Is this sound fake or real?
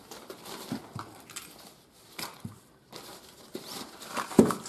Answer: real